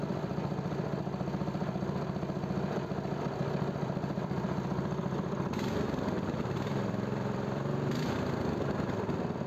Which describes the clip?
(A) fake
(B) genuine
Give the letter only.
A